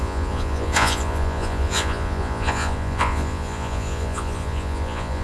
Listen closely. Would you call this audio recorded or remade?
remade